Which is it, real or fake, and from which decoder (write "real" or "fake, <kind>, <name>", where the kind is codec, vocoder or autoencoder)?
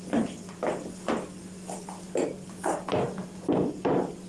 fake, vocoder, BigVGAN v2